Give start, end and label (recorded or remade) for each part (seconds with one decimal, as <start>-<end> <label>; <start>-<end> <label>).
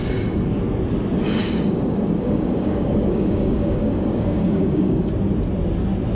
0.0-1.4 recorded; 1.4-5.1 remade; 5.1-6.1 recorded